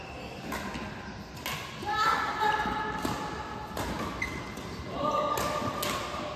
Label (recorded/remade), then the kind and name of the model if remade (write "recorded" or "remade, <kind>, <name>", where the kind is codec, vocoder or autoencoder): recorded